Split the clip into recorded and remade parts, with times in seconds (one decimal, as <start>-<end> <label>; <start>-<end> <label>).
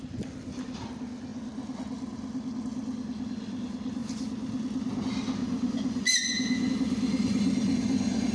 0.0-5.4 recorded; 5.4-6.7 remade; 6.7-8.3 recorded